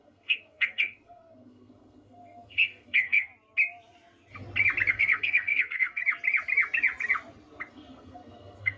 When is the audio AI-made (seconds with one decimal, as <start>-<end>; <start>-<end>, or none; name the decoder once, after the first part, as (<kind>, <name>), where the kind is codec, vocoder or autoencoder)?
0.0-3.3 (codec, SNAC); 4.9-6.0; 7.7-8.8